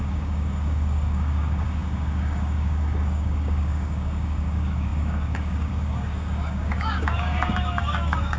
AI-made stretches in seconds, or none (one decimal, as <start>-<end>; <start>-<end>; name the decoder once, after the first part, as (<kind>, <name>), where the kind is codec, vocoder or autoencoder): 0.0-8.4 (codec, DAC)